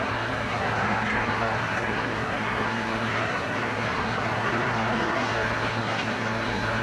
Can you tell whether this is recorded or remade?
remade